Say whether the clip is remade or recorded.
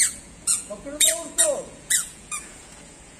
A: remade